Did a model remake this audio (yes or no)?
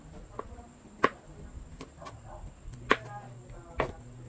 no